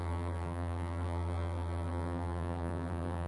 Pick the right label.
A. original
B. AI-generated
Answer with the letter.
B